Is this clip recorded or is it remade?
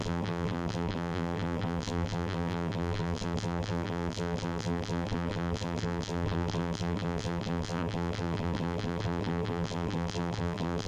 remade